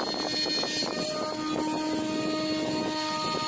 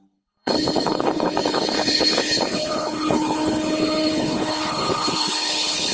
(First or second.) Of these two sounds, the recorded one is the first